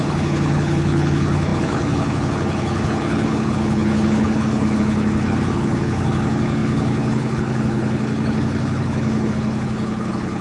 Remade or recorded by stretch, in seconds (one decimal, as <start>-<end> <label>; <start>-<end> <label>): 0.0-10.4 remade